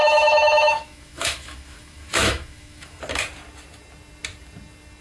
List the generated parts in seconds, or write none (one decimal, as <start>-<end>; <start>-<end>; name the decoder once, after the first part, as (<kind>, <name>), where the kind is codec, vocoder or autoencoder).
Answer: 0.0-3.0 (autoencoder, DAC-VAE)